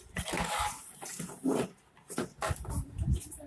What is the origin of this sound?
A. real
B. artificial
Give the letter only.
B